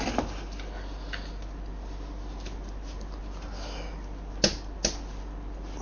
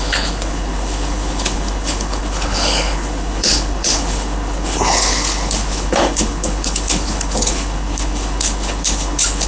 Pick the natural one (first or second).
first